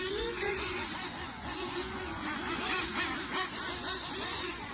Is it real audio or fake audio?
fake